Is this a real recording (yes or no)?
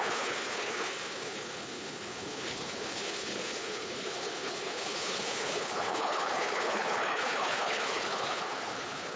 no